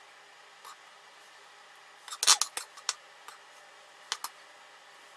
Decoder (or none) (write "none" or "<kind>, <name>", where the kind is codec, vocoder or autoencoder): none